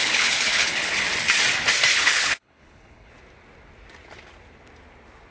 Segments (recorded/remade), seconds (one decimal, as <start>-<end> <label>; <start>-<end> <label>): 0.0-0.9 remade; 0.9-1.9 recorded; 1.9-3.1 remade; 3.1-5.3 recorded